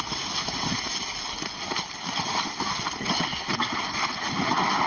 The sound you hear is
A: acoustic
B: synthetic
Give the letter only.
A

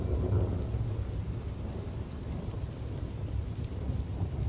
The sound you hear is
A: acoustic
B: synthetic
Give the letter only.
A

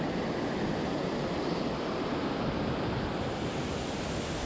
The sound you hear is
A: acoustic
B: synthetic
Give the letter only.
A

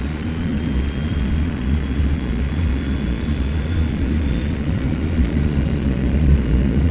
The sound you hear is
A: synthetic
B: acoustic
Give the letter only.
A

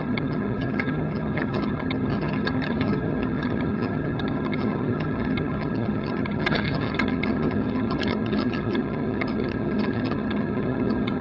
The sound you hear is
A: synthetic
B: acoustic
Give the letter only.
A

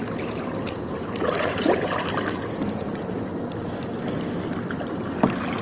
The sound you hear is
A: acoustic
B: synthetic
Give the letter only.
A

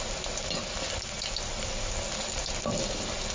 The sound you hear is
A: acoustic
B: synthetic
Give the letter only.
A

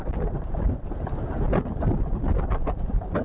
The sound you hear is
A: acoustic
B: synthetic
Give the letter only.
A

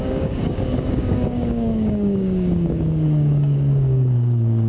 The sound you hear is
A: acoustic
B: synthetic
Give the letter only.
B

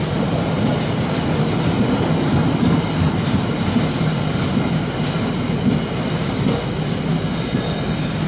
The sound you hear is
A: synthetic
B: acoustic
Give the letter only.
B